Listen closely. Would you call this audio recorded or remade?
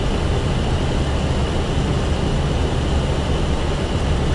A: recorded